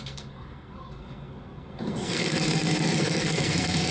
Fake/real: fake